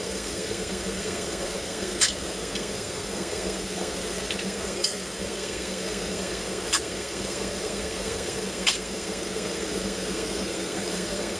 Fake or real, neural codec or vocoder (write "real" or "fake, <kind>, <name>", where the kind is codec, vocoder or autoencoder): fake, codec, SNAC